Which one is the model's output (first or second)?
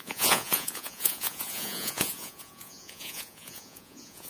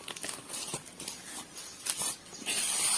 first